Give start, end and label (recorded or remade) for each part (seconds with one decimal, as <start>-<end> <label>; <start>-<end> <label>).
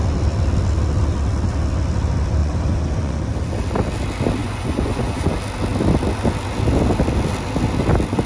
0.0-2.4 recorded; 2.4-3.2 remade; 3.2-4.4 recorded; 4.4-5.3 remade; 5.3-8.3 recorded